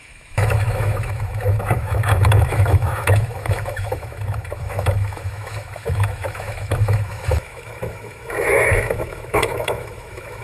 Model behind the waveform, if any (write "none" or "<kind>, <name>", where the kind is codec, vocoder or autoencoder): autoencoder, DAC-VAE